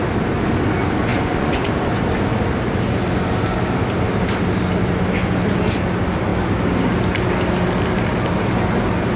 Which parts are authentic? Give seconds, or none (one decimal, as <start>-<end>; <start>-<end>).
0.0-1.1; 1.7-9.2